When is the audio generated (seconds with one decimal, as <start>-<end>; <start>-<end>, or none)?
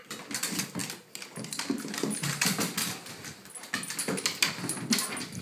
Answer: none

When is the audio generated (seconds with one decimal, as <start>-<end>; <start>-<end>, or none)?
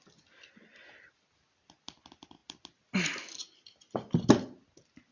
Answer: none